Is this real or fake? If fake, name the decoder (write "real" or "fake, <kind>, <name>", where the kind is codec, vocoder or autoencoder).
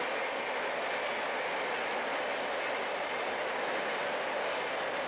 real